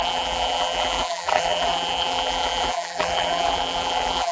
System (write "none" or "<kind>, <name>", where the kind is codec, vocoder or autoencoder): vocoder, BigVGAN v2